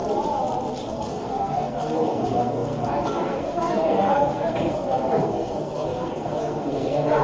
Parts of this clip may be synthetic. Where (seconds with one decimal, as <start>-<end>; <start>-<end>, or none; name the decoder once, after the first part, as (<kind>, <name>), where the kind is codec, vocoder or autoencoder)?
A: 0.9-7.2 (codec, SNAC)